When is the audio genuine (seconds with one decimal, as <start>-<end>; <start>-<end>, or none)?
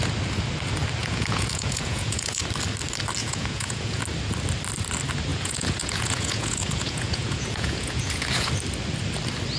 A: 0.0-1.0; 2.4-3.2; 4.0-5.3; 8.5-9.6